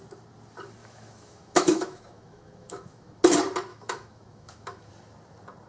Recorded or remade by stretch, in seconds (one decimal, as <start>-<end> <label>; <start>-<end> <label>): 0.0-0.8 recorded; 0.8-3.2 remade; 3.2-3.7 recorded; 3.7-4.9 remade; 4.9-5.7 recorded